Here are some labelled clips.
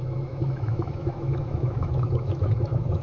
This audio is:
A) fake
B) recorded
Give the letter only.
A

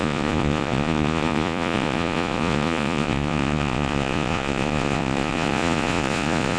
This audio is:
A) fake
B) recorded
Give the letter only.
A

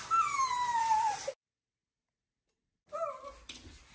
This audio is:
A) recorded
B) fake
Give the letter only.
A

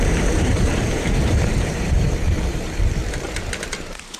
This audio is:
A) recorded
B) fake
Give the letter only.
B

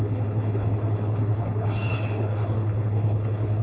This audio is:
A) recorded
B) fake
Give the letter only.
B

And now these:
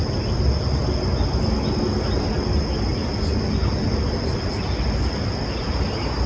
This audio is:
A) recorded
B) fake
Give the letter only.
A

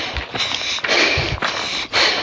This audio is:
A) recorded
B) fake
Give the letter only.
B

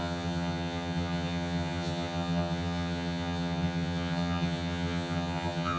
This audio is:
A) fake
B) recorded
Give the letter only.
A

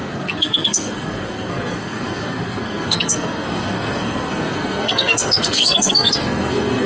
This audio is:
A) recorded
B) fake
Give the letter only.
B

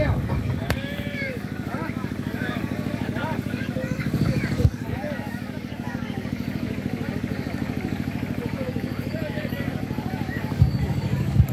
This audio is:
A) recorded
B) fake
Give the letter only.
B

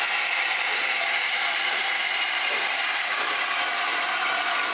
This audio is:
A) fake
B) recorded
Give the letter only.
B